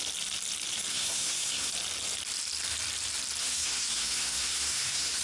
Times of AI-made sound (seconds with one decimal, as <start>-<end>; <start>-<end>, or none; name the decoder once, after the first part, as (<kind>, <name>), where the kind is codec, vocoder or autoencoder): 0.9-1.7 (codec, SNAC); 3.4-5.2

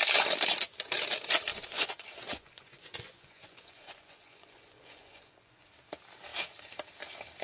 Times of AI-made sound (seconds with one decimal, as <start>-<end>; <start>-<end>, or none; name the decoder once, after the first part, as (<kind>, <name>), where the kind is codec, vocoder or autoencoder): 1.5-5.7 (vocoder, Vocos)

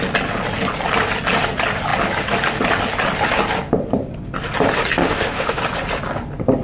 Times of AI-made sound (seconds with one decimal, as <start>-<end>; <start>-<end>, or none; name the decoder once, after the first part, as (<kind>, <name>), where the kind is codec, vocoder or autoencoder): 5.0-5.6 (autoencoder, DAC-VAE)

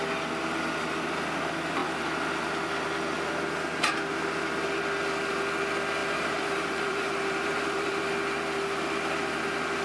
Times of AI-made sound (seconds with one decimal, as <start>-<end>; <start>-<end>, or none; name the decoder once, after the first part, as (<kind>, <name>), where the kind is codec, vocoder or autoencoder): 6.0-8.0 (vocoder, BigVGAN v2)